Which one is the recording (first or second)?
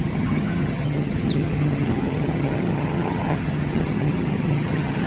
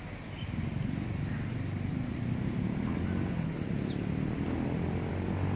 second